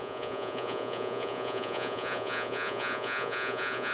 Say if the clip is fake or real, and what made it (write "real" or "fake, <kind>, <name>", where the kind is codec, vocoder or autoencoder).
fake, vocoder, Vocos